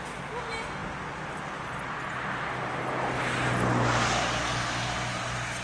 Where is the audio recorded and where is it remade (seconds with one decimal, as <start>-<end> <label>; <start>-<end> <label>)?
0.0-5.6 recorded